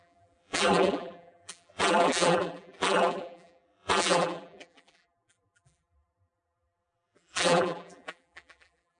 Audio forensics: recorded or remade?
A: remade